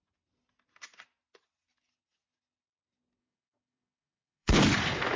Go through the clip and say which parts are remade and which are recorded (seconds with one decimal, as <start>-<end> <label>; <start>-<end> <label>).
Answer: 0.0-3.2 recorded; 3.2-4.6 remade; 4.6-5.2 recorded

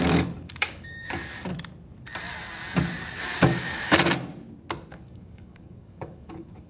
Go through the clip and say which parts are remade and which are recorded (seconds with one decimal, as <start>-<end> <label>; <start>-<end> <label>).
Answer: 0.0-1.5 remade; 1.5-3.4 recorded; 3.4-4.0 remade; 4.0-4.9 recorded; 4.9-6.7 remade

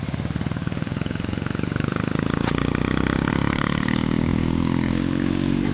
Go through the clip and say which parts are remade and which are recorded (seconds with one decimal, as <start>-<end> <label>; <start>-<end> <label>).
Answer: 0.0-0.5 recorded; 0.5-2.0 remade; 2.0-3.3 recorded; 3.3-5.7 remade

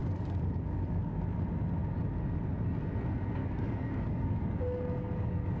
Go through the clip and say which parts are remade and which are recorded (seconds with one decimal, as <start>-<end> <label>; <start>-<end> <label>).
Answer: 0.0-1.2 remade; 1.2-3.4 recorded; 3.4-5.6 remade

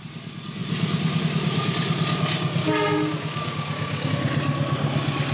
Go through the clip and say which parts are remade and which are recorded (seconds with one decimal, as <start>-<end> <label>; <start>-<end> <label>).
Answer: 0.0-2.6 recorded; 2.6-4.1 remade; 4.1-5.3 recorded

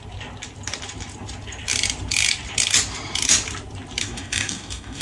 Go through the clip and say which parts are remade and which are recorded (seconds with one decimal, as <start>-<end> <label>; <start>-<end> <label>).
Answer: 0.0-4.0 recorded; 4.0-5.0 remade

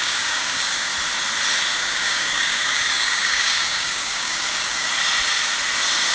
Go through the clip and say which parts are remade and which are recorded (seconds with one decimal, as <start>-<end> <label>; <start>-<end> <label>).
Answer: 0.0-0.9 remade; 0.9-1.8 recorded; 1.8-4.9 remade; 4.9-6.1 recorded

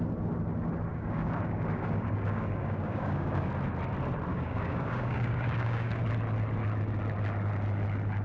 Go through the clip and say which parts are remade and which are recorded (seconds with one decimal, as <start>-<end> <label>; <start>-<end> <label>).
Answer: 0.0-0.9 recorded; 0.9-3.5 remade; 3.5-4.3 recorded; 4.3-6.0 remade; 6.0-8.2 recorded